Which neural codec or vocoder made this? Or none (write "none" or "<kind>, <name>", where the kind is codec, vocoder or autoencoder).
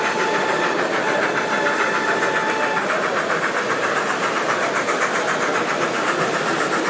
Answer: none